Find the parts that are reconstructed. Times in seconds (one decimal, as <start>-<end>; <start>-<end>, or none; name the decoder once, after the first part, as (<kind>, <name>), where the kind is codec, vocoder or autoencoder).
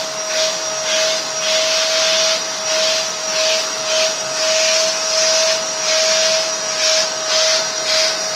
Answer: 3.2-3.8 (autoencoder, DAC-VAE)